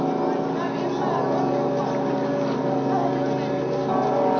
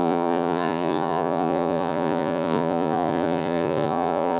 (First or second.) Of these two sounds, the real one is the first